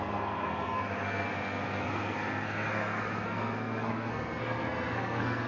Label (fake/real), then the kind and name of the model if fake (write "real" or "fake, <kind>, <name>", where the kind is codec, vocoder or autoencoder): fake, codec, SNAC